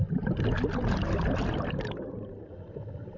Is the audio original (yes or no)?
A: yes